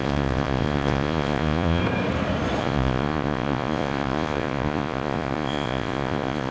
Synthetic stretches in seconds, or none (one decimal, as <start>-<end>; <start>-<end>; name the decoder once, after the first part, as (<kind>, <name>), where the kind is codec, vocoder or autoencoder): 0.0-1.8 (vocoder, Vocos); 2.6-6.5